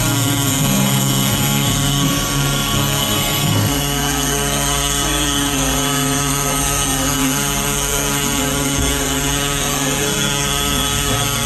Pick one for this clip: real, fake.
fake